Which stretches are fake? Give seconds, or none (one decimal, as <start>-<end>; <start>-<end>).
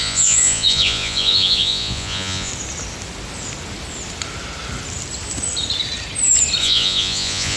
0.0-2.5; 6.6-7.6